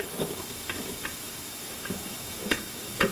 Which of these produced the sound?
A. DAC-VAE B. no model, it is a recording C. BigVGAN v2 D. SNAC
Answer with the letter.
A